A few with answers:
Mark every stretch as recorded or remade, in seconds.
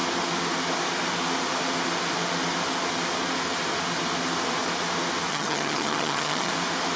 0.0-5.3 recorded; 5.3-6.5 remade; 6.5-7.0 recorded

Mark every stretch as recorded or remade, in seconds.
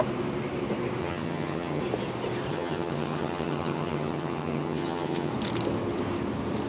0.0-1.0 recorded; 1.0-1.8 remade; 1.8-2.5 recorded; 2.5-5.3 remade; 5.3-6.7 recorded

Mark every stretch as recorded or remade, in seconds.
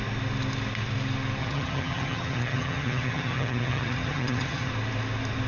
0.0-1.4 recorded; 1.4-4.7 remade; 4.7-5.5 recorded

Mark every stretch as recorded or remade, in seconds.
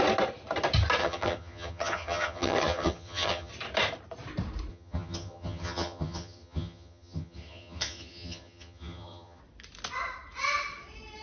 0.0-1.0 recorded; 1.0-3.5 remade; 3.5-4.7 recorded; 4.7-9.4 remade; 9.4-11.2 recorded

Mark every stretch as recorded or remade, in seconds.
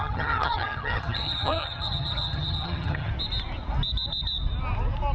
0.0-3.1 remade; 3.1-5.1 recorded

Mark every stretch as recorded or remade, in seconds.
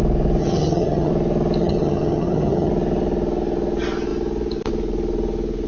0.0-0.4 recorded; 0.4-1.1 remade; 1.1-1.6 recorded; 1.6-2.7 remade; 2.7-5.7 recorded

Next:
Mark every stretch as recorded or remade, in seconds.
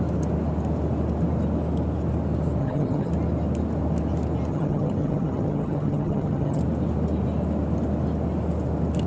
0.0-2.6 recorded; 2.6-3.1 remade; 3.1-4.5 recorded; 4.5-6.6 remade; 6.6-9.1 recorded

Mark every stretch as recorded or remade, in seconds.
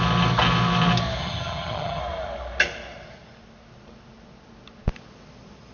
0.0-1.2 recorded; 1.2-2.0 remade; 2.0-5.7 recorded